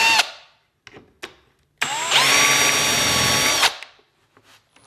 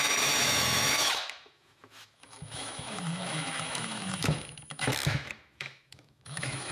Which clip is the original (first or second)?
first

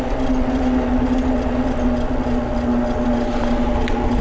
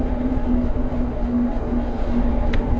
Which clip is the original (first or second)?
first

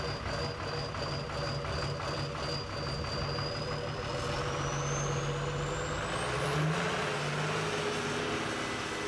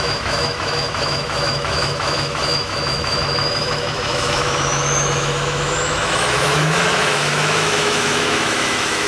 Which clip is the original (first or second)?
first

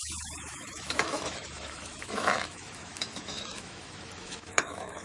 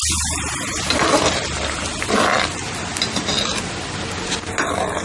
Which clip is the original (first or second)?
second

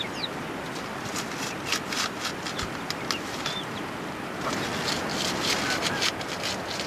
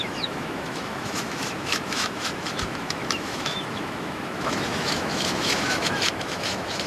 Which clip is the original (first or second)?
first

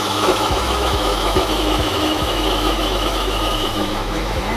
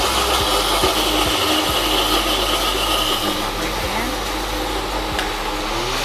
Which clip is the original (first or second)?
second